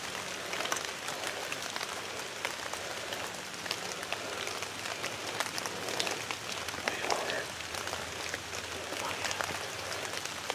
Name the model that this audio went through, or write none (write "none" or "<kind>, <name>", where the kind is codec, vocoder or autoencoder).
none